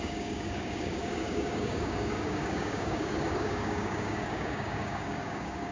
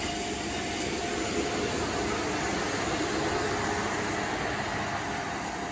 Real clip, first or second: second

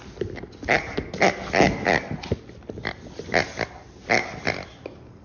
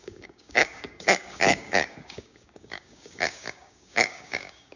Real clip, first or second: first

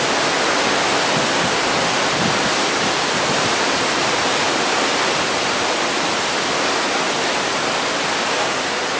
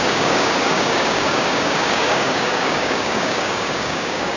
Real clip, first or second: first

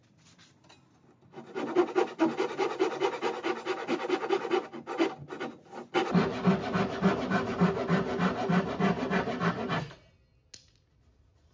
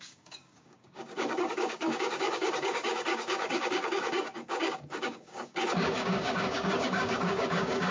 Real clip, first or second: first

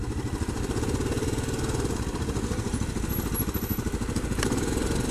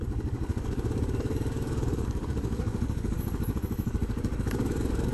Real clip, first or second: first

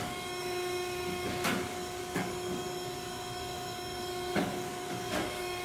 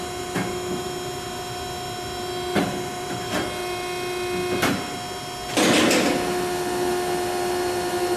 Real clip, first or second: second